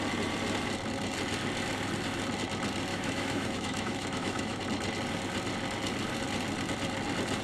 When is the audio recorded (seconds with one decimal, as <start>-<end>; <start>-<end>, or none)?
0.0-2.9; 4.6-7.4